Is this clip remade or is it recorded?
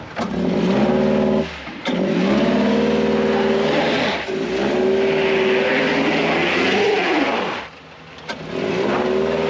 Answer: recorded